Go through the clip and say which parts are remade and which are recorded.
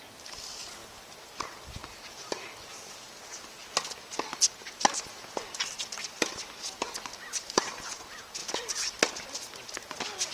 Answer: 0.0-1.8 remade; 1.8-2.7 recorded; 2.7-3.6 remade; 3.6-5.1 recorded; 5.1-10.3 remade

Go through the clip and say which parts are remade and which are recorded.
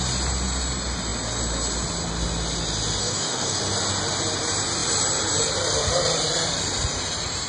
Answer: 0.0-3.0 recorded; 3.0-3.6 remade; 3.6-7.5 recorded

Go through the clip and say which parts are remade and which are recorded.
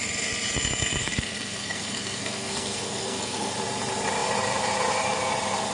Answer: 0.0-1.0 recorded; 1.0-3.5 remade; 3.5-5.7 recorded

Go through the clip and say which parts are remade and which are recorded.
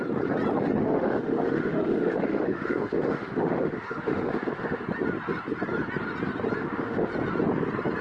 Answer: 0.0-0.8 recorded; 0.8-4.8 remade; 4.8-6.6 recorded; 6.6-7.1 remade; 7.1-8.0 recorded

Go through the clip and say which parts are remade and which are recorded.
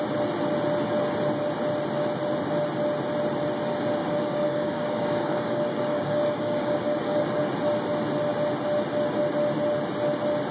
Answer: 0.0-4.0 recorded; 4.0-7.4 remade; 7.4-10.5 recorded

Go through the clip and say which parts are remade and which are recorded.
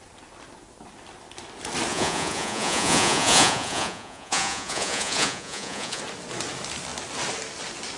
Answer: 0.0-1.9 recorded; 1.9-6.0 remade; 6.0-8.0 recorded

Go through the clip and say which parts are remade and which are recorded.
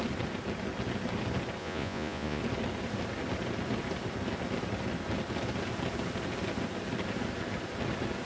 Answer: 0.0-1.6 recorded; 1.6-2.4 remade; 2.4-8.2 recorded